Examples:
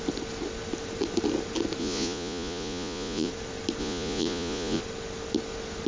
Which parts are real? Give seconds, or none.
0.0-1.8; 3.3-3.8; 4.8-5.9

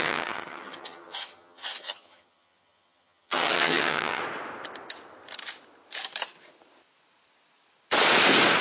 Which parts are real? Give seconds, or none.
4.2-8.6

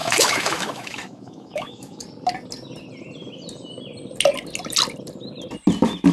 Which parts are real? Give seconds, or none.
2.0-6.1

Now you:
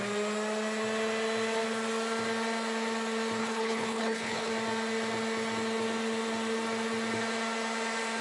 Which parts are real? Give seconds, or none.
0.0-3.4; 4.5-8.2